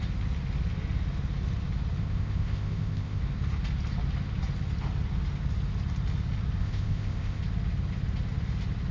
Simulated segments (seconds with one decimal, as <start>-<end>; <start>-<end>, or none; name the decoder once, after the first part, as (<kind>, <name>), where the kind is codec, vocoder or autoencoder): 2.0-3.2 (codec, ZipCodec); 6.6-7.4